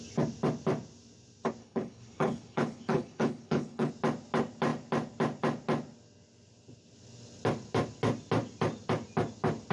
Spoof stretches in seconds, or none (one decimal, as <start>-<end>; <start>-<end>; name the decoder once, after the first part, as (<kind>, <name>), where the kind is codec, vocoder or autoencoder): 1.6-3.9 (codec, HILCodec)